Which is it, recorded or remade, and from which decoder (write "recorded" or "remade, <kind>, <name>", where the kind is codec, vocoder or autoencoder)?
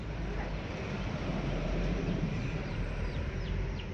remade, vocoder, BigVGAN v2